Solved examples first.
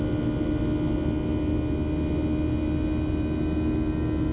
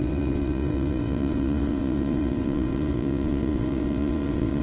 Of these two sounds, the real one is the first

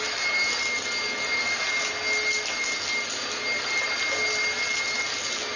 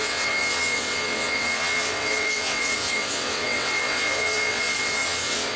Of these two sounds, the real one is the first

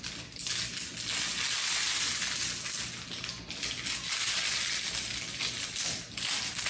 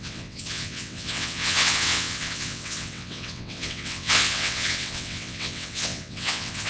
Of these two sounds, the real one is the first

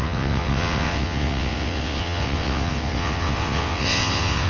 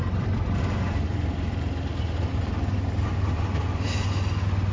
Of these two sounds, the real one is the second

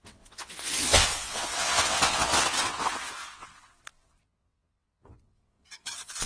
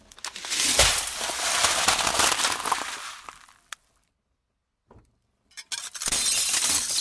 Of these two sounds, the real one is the second